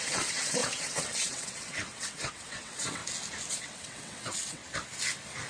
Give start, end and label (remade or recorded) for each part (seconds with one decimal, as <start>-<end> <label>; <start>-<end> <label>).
0.0-3.0 remade; 3.0-3.5 recorded; 3.5-4.6 remade; 4.6-5.5 recorded